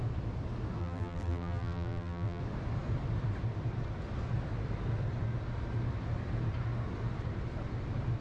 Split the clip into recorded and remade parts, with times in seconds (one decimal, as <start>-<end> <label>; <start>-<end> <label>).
0.0-0.8 recorded; 0.8-2.4 remade; 2.4-8.2 recorded